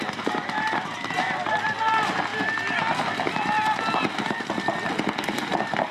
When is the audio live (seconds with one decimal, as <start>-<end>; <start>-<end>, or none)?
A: 0.0-5.9